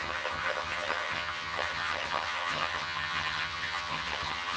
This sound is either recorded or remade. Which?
remade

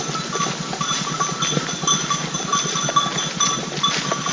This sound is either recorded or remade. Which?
recorded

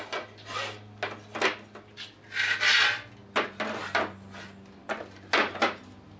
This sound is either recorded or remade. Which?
recorded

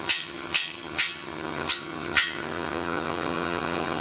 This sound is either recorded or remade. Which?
remade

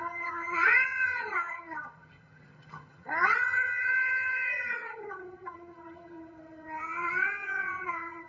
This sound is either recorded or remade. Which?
remade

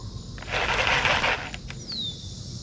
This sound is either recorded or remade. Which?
recorded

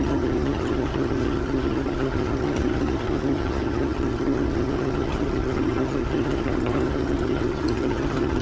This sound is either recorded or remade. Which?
remade